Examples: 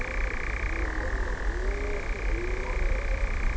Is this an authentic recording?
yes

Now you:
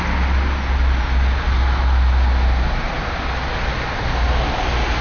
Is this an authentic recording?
yes